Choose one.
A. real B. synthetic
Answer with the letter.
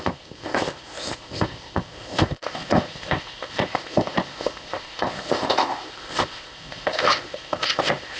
B